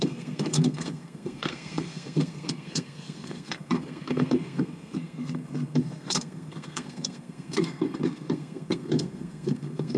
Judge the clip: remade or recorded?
remade